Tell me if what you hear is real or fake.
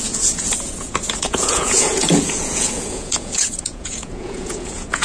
fake